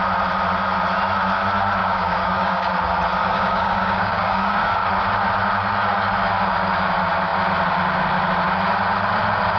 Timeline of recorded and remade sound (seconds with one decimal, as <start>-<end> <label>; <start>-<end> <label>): 0.0-1.8 recorded; 1.8-2.7 remade; 2.7-3.2 recorded; 3.2-4.9 remade; 4.9-9.6 recorded